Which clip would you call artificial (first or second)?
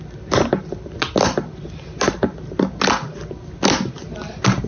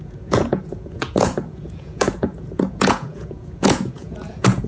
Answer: second